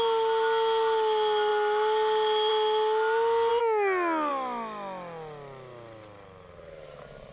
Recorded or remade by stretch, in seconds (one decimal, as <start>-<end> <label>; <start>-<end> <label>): 0.0-7.3 recorded